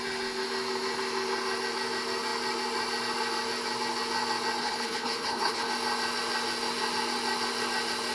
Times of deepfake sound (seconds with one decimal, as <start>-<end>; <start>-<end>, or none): 4.6-5.7